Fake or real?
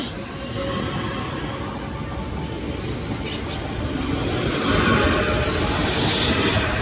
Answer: real